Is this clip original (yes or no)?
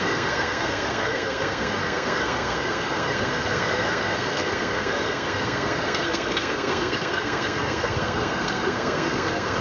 no